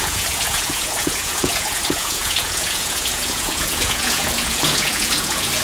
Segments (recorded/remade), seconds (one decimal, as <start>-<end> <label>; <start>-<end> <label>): 0.0-5.6 remade

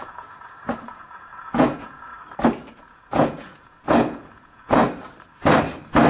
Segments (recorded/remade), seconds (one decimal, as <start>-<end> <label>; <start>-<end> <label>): 0.0-2.1 remade; 2.1-2.7 recorded; 2.7-4.8 remade; 4.8-6.1 recorded

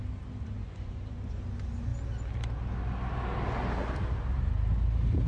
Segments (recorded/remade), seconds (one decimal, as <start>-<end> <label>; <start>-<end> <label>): 0.0-0.6 recorded; 0.6-1.4 remade; 1.4-5.3 recorded

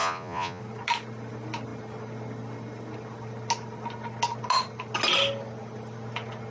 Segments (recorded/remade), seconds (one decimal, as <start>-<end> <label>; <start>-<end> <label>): 0.0-0.6 remade; 0.6-6.5 recorded

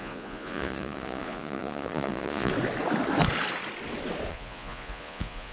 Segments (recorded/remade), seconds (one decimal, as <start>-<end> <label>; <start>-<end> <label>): 0.0-2.5 remade; 2.5-4.3 recorded; 4.3-5.5 remade

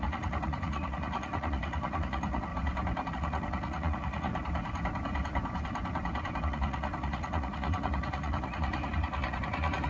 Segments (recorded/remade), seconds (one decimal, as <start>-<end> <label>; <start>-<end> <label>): 0.0-2.5 remade; 2.5-3.1 recorded; 3.1-4.3 remade; 4.3-6.4 recorded; 6.4-9.9 remade

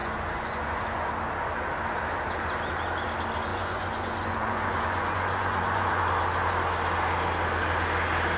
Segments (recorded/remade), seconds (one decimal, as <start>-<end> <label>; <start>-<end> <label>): 0.0-1.1 remade; 1.1-3.5 recorded; 3.5-6.0 remade; 6.0-8.4 recorded

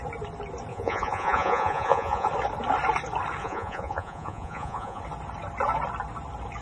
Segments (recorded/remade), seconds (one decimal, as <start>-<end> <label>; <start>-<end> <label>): 0.0-0.7 recorded; 0.7-2.3 remade; 2.3-3.4 recorded; 3.4-5.0 remade; 5.0-6.6 recorded